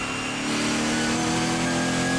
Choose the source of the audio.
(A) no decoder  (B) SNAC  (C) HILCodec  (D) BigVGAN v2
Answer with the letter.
A